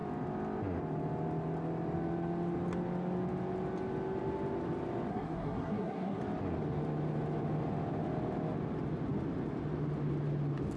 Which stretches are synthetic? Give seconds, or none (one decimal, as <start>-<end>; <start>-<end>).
5.1-6.2